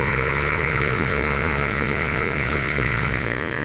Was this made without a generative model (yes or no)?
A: no